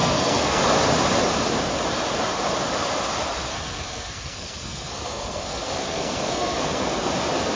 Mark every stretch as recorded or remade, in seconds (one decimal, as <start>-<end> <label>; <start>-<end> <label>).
0.0-0.6 remade; 0.6-3.5 recorded; 3.5-7.1 remade; 7.1-7.6 recorded